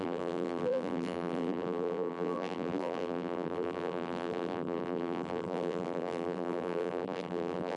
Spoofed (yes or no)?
yes